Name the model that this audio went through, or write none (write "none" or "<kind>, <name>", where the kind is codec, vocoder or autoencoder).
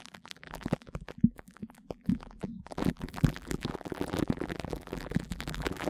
vocoder, BigVGAN v2